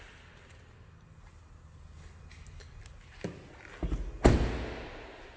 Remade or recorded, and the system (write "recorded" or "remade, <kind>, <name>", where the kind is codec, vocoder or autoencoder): recorded